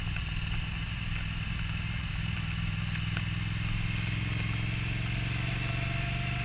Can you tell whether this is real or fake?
real